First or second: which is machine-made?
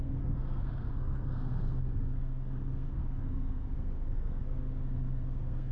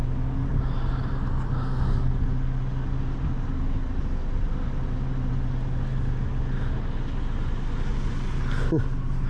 first